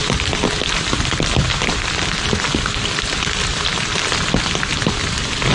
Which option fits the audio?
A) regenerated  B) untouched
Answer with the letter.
B